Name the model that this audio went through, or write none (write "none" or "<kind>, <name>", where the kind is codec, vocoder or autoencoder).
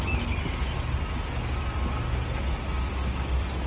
none